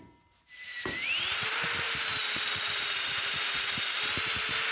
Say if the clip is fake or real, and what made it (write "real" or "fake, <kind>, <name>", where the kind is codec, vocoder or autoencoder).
fake, vocoder, BigVGAN v2